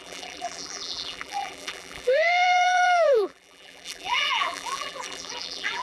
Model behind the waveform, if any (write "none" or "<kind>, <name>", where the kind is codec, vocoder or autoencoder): vocoder, BigVGAN v2